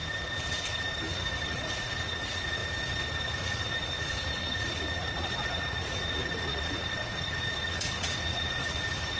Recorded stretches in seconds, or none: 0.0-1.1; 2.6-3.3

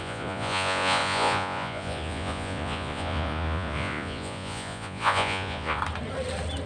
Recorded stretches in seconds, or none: 5.8-6.7

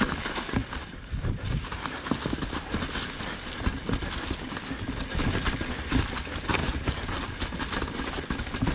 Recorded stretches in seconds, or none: 0.0-0.6; 2.0-6.6; 7.2-8.7

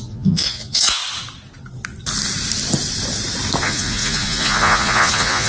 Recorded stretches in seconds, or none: 1.0-3.6